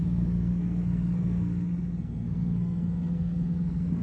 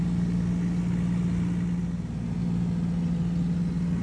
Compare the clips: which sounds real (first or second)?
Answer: second